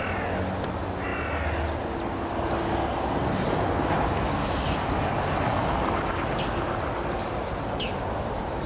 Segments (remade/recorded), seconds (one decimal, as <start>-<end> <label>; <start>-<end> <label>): 0.0-8.7 recorded